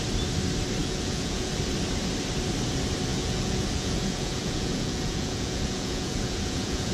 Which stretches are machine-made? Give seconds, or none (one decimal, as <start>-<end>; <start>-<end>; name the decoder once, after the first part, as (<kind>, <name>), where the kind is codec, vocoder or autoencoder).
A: 0.8-1.5 (vocoder, Vocos); 3.1-6.9